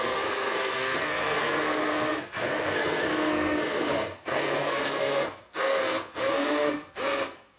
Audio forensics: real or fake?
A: fake